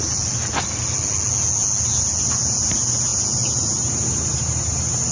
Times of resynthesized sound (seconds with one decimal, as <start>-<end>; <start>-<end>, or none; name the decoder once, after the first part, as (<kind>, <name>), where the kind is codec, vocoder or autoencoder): none